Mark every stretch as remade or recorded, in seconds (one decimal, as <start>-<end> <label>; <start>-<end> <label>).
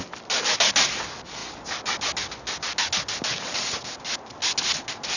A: 0.0-5.2 recorded